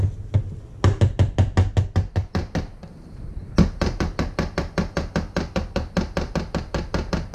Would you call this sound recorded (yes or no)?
yes